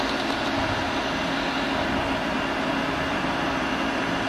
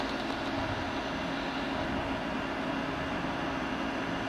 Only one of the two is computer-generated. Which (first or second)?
first